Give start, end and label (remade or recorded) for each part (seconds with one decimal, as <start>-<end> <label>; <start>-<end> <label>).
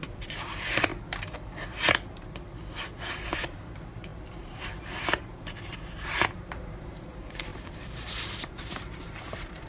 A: 0.0-0.9 remade; 0.9-3.2 recorded; 3.2-9.7 remade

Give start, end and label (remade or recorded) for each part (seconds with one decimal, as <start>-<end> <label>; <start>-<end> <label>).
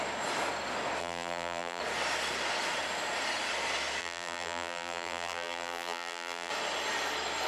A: 0.0-1.0 recorded; 1.0-1.8 remade; 1.8-4.0 recorded; 4.0-6.5 remade; 6.5-7.5 recorded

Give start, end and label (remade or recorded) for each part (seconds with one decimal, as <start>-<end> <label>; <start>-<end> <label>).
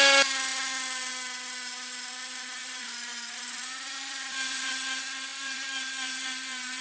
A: 0.0-2.6 recorded; 2.6-4.7 remade; 4.7-5.3 recorded; 5.3-6.8 remade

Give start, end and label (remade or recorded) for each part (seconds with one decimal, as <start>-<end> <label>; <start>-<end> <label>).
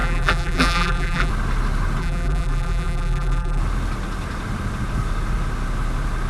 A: 0.0-1.3 remade; 1.3-2.0 recorded; 2.0-3.6 remade; 3.6-6.3 recorded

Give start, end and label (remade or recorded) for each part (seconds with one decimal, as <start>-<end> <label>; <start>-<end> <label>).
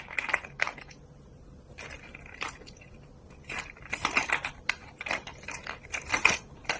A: 0.0-6.8 recorded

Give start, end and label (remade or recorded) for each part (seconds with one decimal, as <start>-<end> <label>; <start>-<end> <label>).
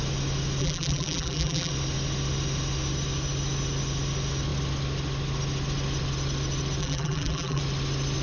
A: 0.0-0.6 recorded; 0.6-1.7 remade; 1.7-6.8 recorded; 6.8-7.6 remade; 7.6-8.2 recorded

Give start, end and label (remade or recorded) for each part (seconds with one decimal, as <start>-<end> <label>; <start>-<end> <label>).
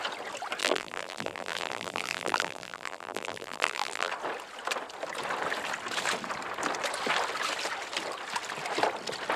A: 0.0-0.6 recorded; 0.6-4.1 remade; 4.1-9.4 recorded